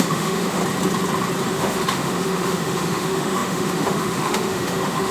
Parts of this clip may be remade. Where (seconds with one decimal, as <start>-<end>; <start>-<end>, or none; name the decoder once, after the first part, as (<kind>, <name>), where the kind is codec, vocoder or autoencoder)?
0.0-0.6 (autoencoder, DAC-VAE); 1.5-5.1